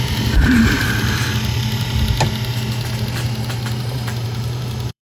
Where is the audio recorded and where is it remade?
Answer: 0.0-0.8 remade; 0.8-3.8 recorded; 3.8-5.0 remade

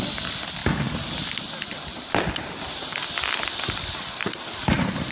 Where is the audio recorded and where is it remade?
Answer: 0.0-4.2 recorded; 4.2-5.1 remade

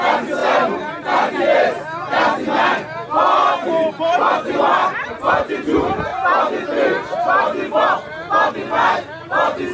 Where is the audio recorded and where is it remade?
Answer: 0.0-9.7 recorded

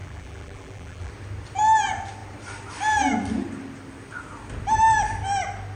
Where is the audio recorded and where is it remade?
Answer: 0.0-1.1 remade; 1.1-5.8 recorded

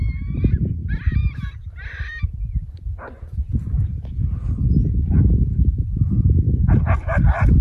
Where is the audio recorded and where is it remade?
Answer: 0.0-7.6 remade